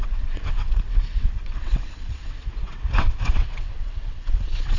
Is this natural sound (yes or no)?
no